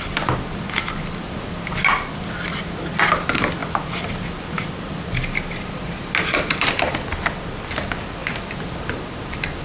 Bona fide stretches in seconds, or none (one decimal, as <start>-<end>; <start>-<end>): 0.0-9.6